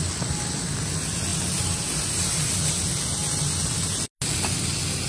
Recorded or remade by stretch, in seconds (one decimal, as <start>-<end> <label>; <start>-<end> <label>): 0.0-5.1 recorded